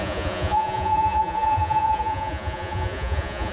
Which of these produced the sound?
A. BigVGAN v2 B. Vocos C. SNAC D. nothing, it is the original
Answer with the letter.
B